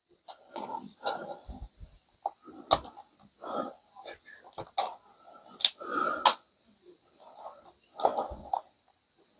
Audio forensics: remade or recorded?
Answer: recorded